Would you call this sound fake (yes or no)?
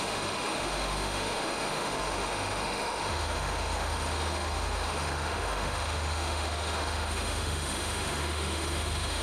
yes